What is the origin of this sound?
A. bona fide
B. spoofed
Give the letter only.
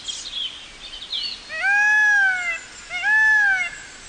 A